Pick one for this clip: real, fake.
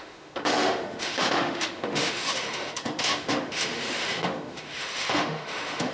fake